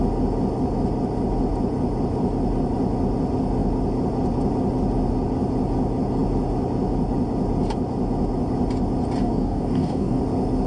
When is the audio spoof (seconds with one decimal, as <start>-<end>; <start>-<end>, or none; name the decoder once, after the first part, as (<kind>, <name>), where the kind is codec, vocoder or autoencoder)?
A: 9.2-10.2 (codec, DAC)

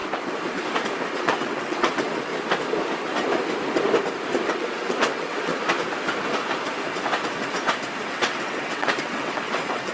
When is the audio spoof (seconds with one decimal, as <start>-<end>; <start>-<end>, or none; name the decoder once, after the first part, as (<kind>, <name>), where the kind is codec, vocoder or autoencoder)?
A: 1.2-2.3 (vocoder, WaveNeXt); 4.5-5.5; 8.1-9.9

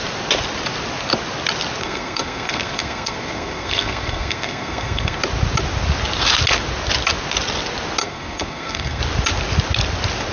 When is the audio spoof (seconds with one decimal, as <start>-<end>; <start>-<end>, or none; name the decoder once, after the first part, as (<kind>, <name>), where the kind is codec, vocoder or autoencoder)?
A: 1.8-5.2 (codec, SNAC); 8.0-9.0

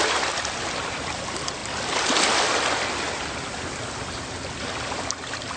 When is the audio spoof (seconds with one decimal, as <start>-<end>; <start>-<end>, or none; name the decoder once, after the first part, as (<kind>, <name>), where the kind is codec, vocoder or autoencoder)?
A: none

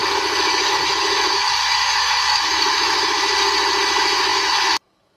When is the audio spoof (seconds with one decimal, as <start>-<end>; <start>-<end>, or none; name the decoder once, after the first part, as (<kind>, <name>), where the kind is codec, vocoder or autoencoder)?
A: 0.0-3.3 (autoencoder, DAC-VAE); 3.8-5.2

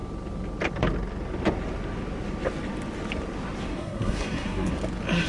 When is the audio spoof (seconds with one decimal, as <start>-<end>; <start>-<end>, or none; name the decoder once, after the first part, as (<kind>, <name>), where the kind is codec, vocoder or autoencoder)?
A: 3.7-4.7 (codec, SNAC)

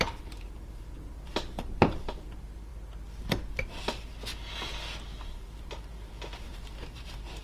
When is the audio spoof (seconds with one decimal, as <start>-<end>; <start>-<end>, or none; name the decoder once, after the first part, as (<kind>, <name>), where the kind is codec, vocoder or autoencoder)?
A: 0.0-2.7 (vocoder, BigVGAN v2); 5.2-7.4